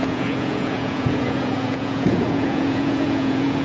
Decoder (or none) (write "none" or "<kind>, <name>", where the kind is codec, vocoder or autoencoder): vocoder, Vocos